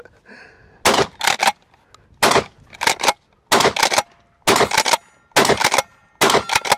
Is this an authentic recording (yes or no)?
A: yes